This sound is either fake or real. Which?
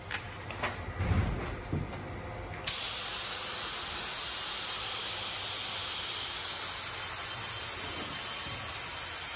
real